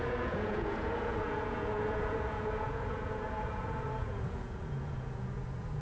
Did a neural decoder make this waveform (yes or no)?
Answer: yes